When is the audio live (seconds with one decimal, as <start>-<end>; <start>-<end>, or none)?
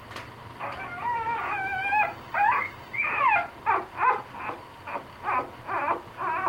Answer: 0.0-0.4; 2.0-6.5